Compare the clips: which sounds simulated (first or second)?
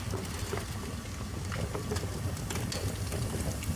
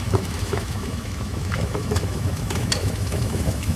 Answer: second